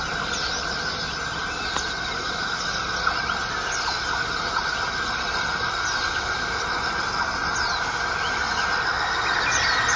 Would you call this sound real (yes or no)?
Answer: yes